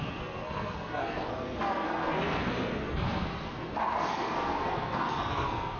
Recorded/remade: remade